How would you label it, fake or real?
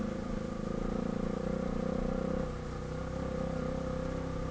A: real